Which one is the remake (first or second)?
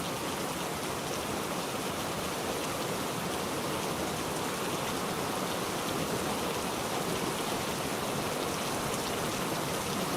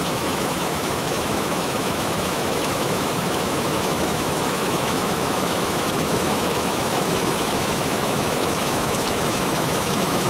second